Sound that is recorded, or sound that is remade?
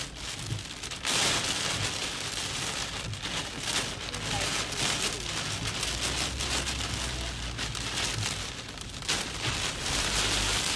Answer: recorded